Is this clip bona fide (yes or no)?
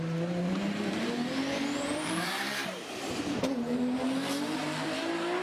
no